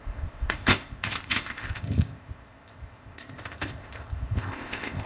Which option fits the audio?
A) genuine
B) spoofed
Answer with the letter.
B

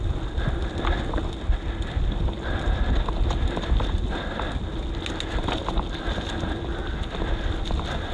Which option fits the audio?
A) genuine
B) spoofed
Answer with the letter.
A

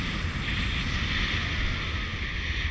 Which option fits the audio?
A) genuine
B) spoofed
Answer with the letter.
A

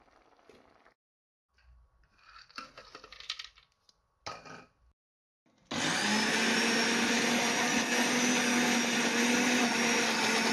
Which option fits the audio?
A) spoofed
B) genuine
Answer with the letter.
B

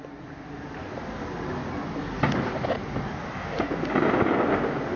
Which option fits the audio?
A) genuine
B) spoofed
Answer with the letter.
A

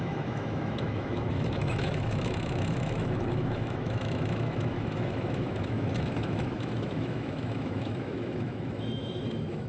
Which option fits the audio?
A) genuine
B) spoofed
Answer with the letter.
B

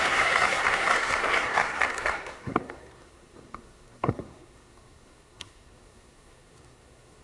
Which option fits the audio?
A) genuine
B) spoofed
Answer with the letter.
B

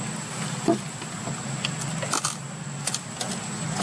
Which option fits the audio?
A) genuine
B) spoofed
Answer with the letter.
A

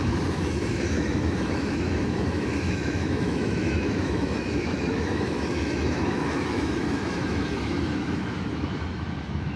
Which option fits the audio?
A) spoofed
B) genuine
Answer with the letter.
A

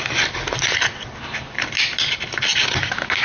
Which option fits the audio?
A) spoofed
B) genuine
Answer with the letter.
B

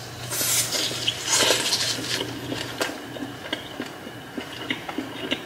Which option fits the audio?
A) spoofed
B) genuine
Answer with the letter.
B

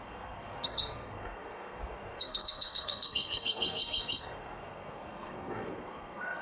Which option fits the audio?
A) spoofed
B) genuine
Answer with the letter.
A